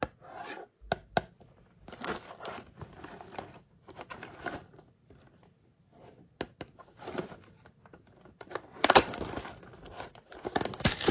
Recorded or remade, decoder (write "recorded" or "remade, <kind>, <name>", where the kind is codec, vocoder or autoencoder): recorded